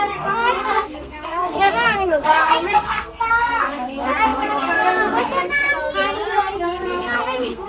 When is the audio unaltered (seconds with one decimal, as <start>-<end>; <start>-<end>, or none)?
5.6-6.6